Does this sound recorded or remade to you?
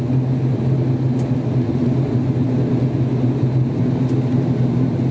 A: recorded